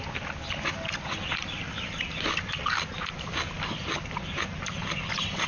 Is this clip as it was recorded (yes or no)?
yes